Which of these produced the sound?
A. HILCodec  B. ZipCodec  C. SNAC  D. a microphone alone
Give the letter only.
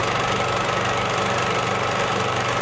D